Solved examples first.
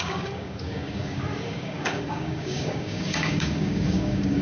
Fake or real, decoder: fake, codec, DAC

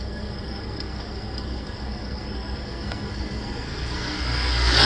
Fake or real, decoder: fake, codec, SNAC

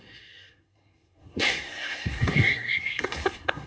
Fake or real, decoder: fake, codec, SNAC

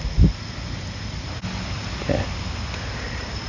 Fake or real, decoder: real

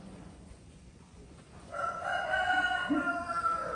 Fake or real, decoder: fake, vocoder, Vocos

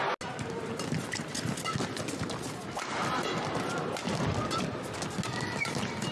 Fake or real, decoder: real